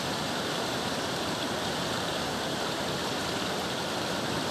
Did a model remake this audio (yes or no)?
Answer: yes